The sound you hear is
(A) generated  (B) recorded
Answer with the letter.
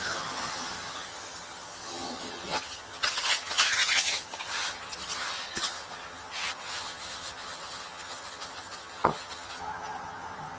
A